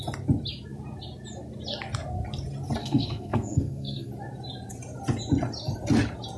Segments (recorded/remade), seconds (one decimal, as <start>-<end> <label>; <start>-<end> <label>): 0.0-2.8 recorded; 2.8-4.1 remade; 4.1-6.4 recorded